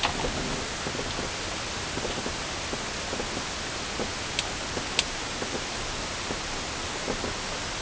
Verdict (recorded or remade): recorded